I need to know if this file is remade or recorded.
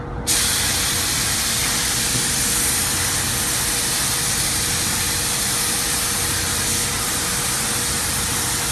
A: recorded